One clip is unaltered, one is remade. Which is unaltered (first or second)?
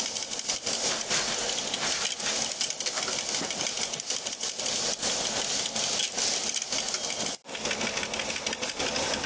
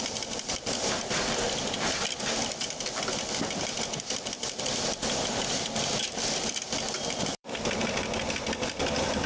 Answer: first